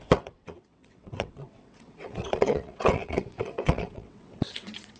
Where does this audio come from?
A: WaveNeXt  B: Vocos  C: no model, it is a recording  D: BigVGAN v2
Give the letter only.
A